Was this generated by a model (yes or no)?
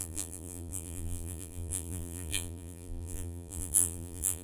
yes